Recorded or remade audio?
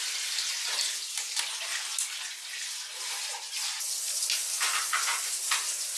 recorded